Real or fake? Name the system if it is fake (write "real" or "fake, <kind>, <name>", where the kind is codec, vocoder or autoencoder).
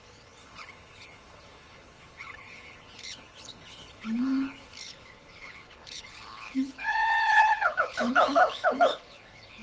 fake, codec, HILCodec